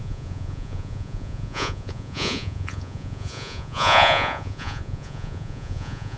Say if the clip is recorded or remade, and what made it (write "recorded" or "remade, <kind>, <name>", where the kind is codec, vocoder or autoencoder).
remade, vocoder, Vocos